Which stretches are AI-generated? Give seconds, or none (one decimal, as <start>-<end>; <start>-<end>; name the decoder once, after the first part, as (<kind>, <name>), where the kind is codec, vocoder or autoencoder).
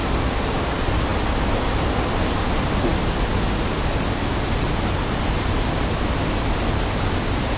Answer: none